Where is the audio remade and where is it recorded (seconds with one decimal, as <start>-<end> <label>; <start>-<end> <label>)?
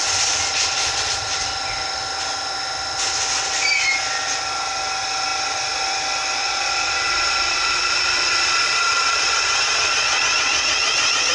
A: 0.0-0.8 recorded; 0.8-1.3 remade; 1.3-6.4 recorded; 6.4-11.3 remade